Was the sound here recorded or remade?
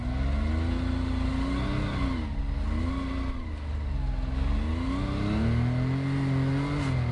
recorded